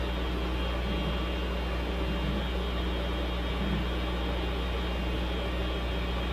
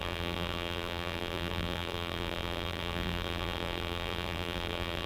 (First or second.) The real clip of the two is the first